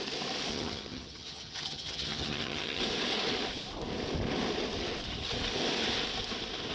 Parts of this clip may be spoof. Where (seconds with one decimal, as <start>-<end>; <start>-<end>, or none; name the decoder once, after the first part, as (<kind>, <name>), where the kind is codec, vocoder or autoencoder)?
0.5-2.8 (vocoder, HiFi-GAN)